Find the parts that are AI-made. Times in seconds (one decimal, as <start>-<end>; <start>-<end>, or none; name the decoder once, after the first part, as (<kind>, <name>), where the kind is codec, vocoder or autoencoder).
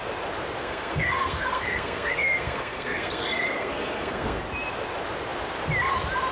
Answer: 0.6-4.4 (codec, SNAC)